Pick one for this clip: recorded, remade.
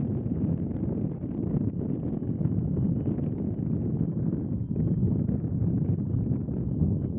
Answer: recorded